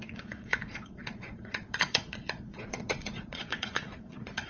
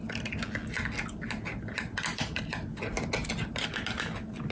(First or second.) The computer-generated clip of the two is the first